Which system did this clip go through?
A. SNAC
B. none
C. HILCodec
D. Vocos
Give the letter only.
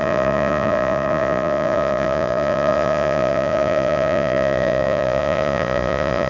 D